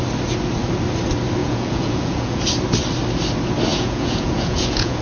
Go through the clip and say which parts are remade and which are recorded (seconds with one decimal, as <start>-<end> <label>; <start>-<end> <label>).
0.0-1.4 recorded; 1.4-2.4 remade; 2.4-3.7 recorded; 3.7-5.0 remade